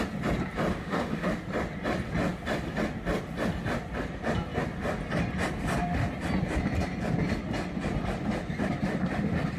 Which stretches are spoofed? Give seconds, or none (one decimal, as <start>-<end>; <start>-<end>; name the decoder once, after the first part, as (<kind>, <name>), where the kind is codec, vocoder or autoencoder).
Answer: 0.7-1.3 (autoencoder, DAC-VAE)